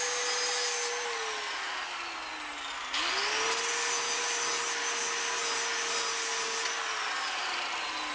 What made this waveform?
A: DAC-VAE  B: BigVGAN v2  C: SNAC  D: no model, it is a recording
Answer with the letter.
D